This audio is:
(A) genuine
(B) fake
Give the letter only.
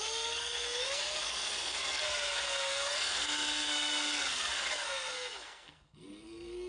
B